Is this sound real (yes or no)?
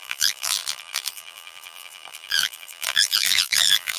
no